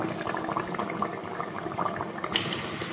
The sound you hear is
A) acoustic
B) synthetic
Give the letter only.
A